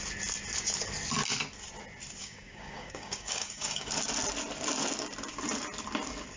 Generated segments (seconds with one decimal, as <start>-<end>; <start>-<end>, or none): 2.2-3.9